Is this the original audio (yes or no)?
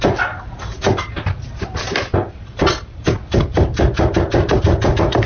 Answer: yes